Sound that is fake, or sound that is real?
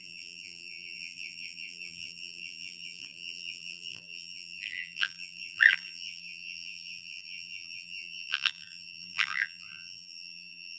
fake